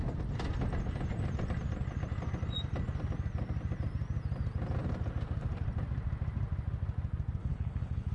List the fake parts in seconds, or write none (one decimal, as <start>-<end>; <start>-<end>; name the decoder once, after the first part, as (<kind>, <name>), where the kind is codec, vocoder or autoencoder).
7.4-8.1 (codec, HILCodec)